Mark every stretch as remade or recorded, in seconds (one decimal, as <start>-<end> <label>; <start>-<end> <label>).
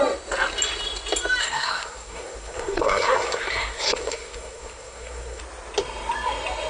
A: 0.0-1.4 recorded; 1.4-5.4 remade; 5.4-6.7 recorded